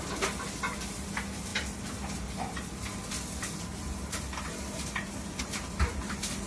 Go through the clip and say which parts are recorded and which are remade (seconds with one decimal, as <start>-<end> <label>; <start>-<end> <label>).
0.0-6.5 recorded